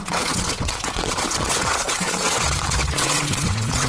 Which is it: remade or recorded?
remade